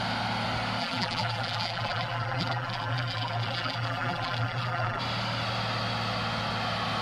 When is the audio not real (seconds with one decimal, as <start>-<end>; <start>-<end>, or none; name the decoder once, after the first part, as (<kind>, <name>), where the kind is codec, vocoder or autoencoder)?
0.8-5.0 (vocoder, BigVGAN v2)